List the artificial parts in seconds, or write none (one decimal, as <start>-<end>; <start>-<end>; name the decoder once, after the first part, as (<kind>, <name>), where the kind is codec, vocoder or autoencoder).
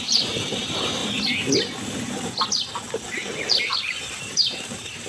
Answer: 0.0-1.0 (vocoder, BigVGAN v2); 3.5-5.1